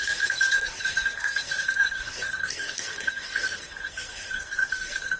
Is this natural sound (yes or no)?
no